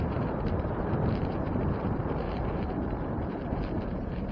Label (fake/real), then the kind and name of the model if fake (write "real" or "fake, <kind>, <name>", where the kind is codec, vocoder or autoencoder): fake, vocoder, BigVGAN v2